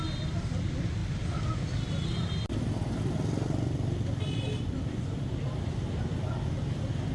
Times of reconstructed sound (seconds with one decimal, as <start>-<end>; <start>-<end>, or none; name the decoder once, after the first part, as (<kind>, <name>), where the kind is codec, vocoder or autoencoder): none

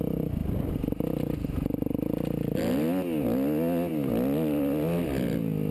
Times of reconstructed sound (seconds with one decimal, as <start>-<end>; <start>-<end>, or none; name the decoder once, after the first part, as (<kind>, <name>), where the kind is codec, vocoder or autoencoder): none